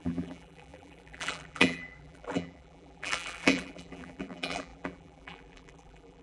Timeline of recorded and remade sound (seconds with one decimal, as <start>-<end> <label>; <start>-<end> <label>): 0.0-6.2 remade